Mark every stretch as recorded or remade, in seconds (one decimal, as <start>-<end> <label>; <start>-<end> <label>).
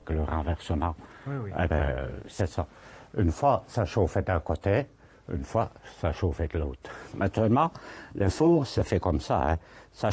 0.0-1.8 recorded; 1.8-2.4 remade; 2.4-8.0 recorded; 8.0-8.8 remade; 8.8-10.1 recorded